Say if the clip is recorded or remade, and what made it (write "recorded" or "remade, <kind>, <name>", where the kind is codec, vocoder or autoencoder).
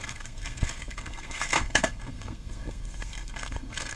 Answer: remade, codec, SNAC